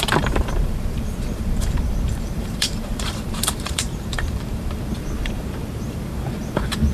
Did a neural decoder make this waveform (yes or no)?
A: yes